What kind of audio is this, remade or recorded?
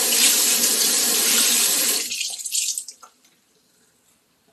remade